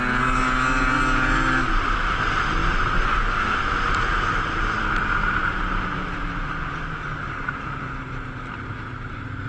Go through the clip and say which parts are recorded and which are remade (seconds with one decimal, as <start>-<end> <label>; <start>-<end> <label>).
0.0-9.5 recorded